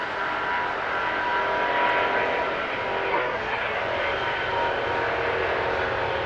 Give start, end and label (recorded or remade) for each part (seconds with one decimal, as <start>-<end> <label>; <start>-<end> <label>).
0.0-3.1 recorded; 3.1-3.8 remade; 3.8-6.3 recorded